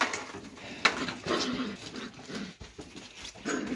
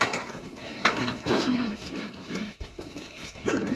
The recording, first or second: first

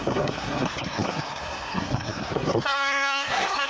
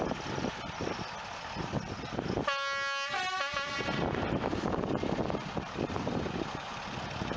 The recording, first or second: second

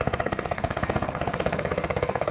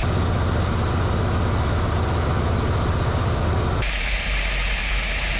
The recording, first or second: second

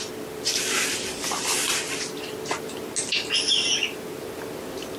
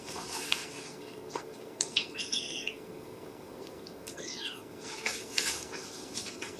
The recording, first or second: first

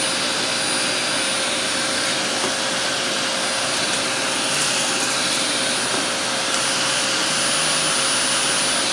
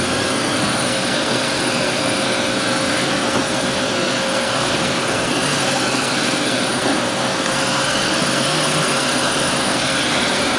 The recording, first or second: first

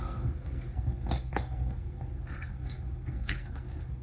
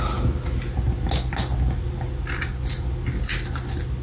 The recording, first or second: second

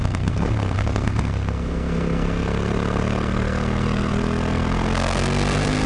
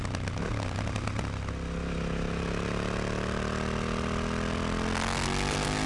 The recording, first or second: second